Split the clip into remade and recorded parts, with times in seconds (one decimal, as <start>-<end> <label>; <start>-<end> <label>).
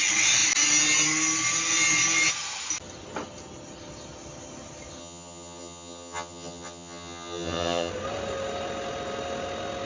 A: 0.0-5.0 recorded; 5.0-7.9 remade; 7.9-9.9 recorded